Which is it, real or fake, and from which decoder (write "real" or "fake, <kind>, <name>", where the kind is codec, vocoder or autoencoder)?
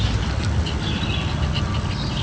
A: real